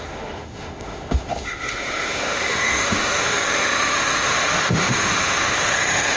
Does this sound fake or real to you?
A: fake